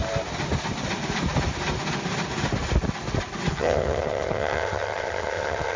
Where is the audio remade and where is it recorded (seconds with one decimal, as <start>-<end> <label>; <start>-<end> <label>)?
0.0-3.5 recorded; 3.5-5.8 remade